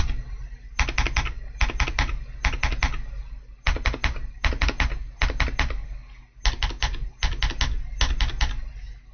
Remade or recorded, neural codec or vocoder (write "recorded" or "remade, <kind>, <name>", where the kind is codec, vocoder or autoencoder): recorded